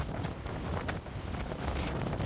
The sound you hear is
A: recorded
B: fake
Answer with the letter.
A